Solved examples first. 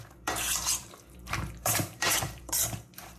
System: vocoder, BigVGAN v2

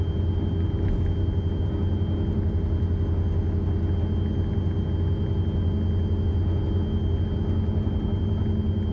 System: none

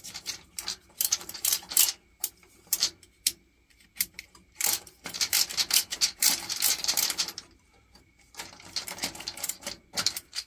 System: vocoder, BigVGAN v2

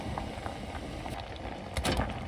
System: none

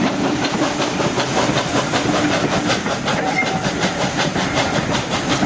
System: vocoder, BigVGAN v2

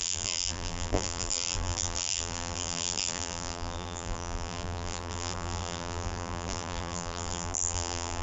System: vocoder, BigVGAN v2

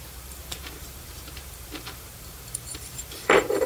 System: vocoder, BigVGAN v2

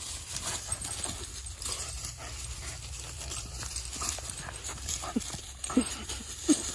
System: none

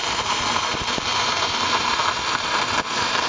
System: vocoder, BigVGAN v2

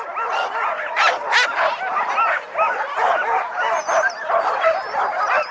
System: none